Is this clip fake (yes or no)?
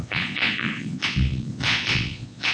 yes